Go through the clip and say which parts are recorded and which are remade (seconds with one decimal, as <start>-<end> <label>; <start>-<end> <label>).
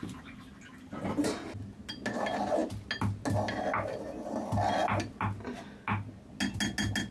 0.0-7.1 recorded